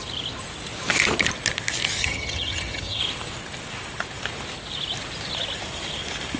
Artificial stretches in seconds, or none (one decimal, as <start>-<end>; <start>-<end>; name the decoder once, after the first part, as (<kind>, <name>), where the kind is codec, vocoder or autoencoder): 2.0-3.0 (vocoder, HiFi-GAN)